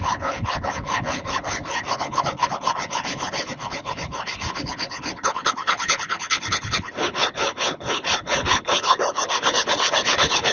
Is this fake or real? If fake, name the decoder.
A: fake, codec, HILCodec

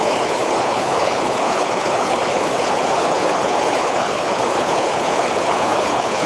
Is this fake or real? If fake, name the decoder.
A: fake, codec, HILCodec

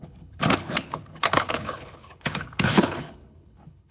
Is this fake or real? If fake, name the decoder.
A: fake, codec, HILCodec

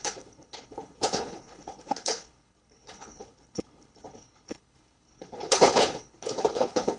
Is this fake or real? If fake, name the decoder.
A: fake, codec, HILCodec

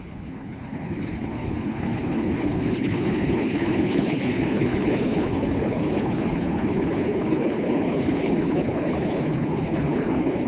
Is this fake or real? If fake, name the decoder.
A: fake, codec, HILCodec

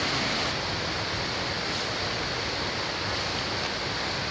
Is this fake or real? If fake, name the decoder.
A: real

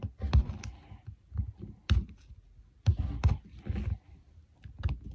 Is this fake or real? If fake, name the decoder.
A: real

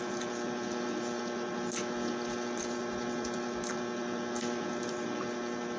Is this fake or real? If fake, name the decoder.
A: real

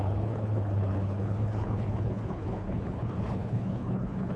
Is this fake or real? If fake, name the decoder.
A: fake, codec, HILCodec